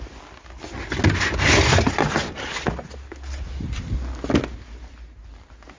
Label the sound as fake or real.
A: real